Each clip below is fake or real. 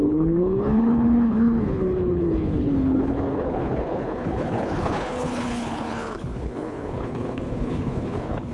fake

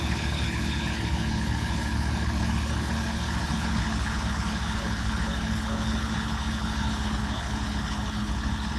fake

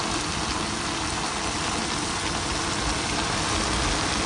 real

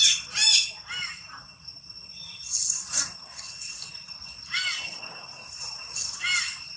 real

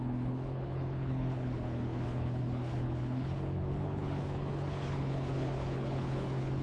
fake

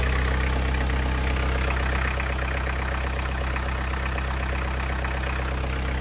real